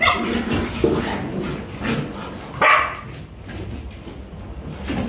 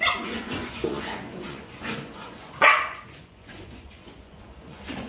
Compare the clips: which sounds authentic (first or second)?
first